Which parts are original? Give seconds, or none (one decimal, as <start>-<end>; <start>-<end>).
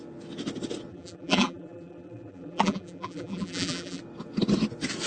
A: 0.0-0.9; 4.0-5.1